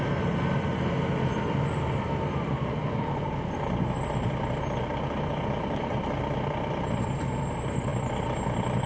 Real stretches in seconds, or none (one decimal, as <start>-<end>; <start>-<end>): 0.0-8.9

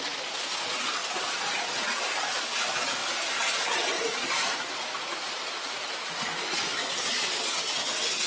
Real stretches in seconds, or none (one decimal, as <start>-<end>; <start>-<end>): 0.0-8.3